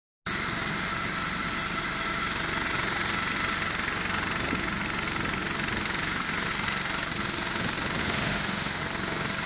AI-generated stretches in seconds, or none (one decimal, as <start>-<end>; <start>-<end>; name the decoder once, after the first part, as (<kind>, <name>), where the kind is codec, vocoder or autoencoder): 8.0-8.8 (autoencoder, DAC-VAE)